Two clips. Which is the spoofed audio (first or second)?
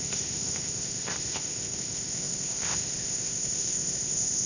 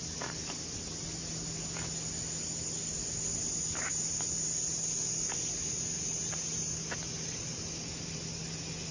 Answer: first